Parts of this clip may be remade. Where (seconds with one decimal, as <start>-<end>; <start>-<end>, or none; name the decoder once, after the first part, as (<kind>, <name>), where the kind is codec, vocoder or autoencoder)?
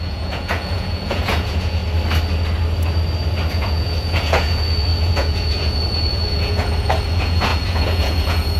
0.0-1.8 (vocoder, Vocos); 3.5-8.6